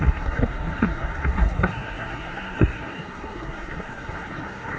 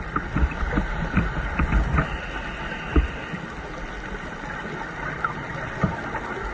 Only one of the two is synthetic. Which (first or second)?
first